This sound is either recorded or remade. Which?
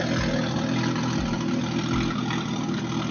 recorded